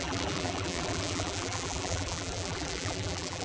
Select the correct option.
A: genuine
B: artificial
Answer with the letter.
B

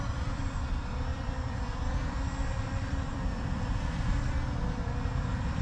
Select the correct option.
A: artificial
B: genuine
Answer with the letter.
A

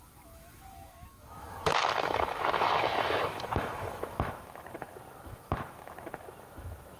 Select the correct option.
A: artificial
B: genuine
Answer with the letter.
A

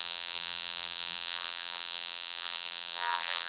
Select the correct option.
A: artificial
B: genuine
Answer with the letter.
A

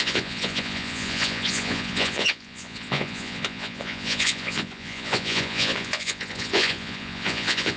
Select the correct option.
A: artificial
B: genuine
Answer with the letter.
A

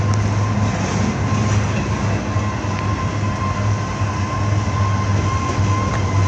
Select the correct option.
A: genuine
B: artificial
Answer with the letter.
A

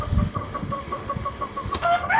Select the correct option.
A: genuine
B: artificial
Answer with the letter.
B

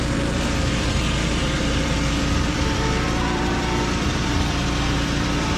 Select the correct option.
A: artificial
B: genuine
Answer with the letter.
A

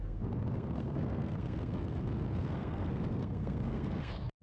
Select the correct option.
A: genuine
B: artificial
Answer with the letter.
B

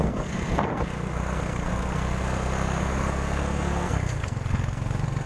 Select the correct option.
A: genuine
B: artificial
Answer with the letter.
B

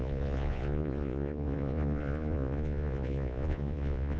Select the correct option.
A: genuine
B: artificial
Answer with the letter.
B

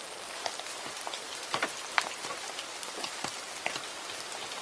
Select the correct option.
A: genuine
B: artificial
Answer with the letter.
B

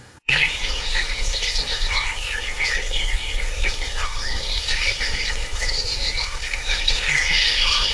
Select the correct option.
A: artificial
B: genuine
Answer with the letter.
A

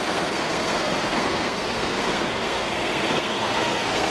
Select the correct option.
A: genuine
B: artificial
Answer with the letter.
B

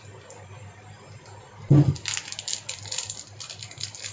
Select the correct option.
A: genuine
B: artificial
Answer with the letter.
A